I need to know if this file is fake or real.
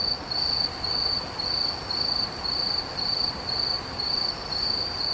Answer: real